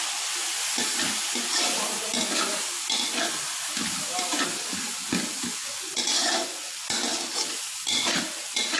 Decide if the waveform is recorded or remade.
recorded